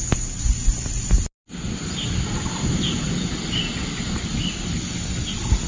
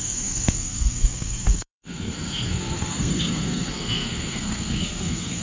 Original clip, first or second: first